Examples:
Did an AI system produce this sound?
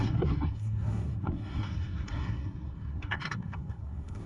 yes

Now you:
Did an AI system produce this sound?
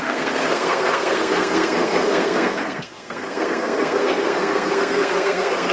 yes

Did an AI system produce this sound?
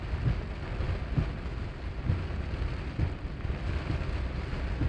no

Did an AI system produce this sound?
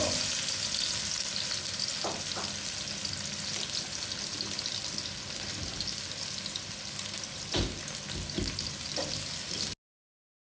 no